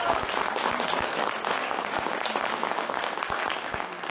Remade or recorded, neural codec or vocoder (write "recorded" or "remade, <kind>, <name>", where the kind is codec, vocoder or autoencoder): remade, codec, DAC